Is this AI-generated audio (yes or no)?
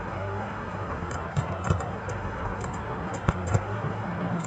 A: yes